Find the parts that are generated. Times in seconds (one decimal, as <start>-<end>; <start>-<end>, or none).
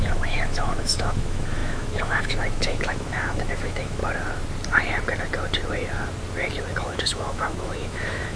0.0-4.0; 6.8-8.4